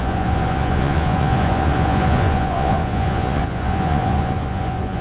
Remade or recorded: remade